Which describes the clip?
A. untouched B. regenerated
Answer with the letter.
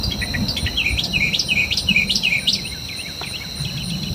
A